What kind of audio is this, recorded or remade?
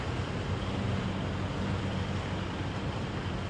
recorded